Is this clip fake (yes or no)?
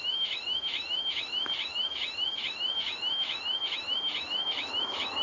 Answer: yes